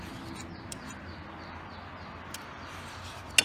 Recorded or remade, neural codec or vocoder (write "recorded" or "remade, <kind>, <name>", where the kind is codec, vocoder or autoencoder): recorded